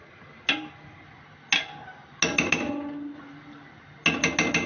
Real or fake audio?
real